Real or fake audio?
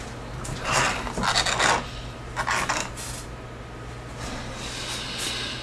real